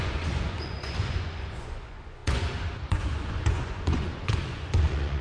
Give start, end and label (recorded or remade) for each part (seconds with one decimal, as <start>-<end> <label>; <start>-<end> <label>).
0.0-5.2 remade